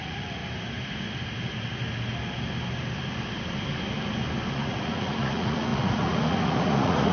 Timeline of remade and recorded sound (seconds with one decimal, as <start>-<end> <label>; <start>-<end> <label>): 0.0-0.4 remade; 0.4-4.5 recorded; 4.5-7.1 remade